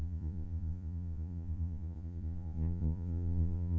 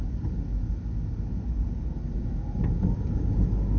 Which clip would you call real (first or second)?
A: second